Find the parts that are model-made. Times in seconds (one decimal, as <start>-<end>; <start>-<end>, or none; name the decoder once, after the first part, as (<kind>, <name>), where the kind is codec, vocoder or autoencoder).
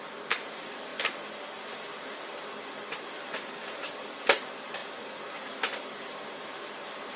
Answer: 0.0-0.9 (vocoder, BigVGAN v2); 3.0-7.2